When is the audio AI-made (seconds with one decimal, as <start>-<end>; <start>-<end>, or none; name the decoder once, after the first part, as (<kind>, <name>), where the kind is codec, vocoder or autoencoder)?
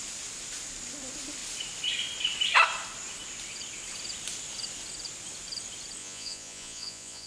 6.0-7.3 (vocoder, Vocos)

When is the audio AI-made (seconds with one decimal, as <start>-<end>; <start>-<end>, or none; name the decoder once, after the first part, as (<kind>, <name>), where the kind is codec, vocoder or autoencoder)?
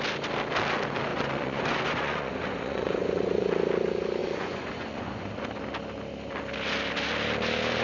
1.1-3.5 (vocoder, Vocos); 4.2-5.3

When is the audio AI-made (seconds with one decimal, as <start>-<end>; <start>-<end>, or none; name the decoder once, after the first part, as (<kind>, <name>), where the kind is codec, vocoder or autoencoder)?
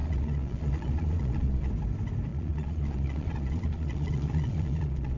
0.0-1.7 (vocoder, Vocos); 2.3-5.2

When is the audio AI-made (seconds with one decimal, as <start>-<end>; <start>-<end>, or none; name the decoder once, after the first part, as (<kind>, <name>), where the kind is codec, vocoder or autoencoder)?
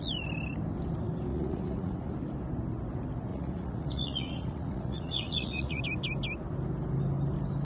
1.3-2.1 (vocoder, Vocos); 3.3-5.8